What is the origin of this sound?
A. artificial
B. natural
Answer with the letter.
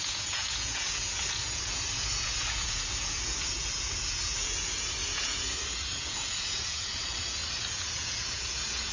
A